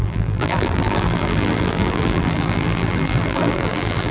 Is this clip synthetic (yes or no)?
yes